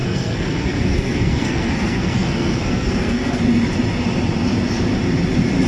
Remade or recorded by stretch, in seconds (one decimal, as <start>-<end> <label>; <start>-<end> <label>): 0.0-3.4 remade; 3.4-5.7 recorded